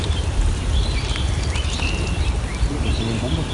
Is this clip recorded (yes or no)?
yes